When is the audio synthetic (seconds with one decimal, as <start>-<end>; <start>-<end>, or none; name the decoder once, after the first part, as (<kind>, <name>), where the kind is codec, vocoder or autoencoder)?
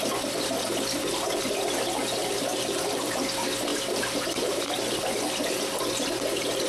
2.5-3.2 (vocoder, BigVGAN v2); 3.7-4.8